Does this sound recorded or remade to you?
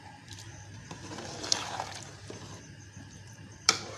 remade